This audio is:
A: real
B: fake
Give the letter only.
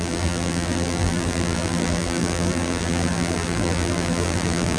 B